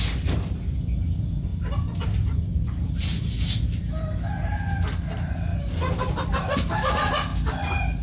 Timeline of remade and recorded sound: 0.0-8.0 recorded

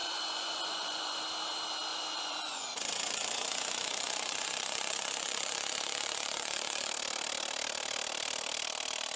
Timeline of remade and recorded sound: 0.0-1.2 remade; 1.2-1.9 recorded; 1.9-6.9 remade; 6.9-9.2 recorded